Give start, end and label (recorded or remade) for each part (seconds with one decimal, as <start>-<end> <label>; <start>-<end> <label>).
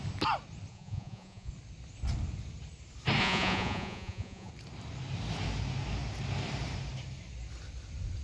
0.0-0.7 recorded; 0.7-1.5 remade; 1.5-3.2 recorded; 3.2-4.5 remade; 4.5-8.2 recorded